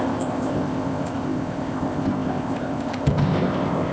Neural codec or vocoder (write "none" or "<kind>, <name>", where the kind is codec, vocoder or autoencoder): codec, ZipCodec